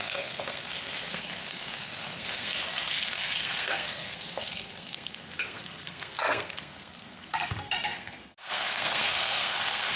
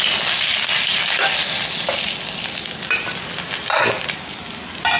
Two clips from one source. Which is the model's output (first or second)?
first